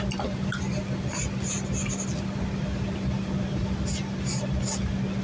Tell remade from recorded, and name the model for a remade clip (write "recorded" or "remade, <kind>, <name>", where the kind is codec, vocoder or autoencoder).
recorded